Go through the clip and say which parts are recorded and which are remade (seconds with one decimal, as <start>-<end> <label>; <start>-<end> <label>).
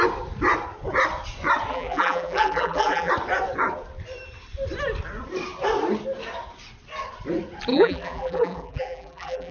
0.0-1.7 recorded; 1.7-3.1 remade; 3.1-7.7 recorded; 7.7-9.5 remade